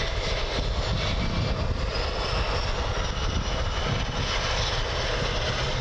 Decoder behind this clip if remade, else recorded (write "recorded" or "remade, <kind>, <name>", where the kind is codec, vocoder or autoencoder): recorded